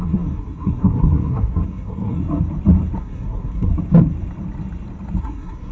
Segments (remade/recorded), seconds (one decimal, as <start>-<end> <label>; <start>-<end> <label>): 0.0-2.2 remade; 2.2-3.0 recorded; 3.0-3.7 remade; 3.7-5.2 recorded; 5.2-5.7 remade